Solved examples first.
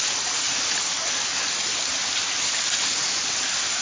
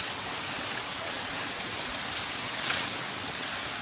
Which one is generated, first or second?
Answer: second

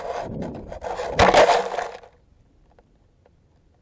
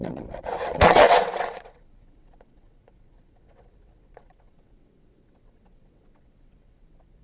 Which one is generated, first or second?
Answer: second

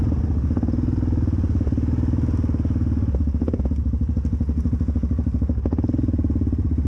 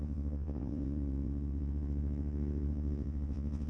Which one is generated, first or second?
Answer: second